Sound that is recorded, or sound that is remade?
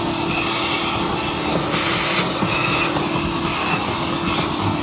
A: recorded